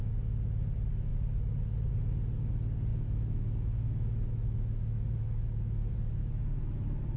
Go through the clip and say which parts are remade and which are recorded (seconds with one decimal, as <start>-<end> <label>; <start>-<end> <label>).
0.0-2.9 recorded; 2.9-5.4 remade; 5.4-7.2 recorded